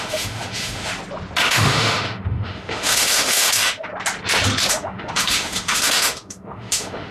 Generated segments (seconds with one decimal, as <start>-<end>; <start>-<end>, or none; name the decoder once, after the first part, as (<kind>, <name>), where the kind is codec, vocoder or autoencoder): 0.0-0.9 (autoencoder, DAC-VAE); 1.4-3.9; 4.7-7.1